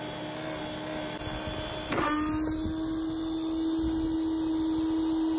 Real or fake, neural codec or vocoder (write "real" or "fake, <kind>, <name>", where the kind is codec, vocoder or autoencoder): real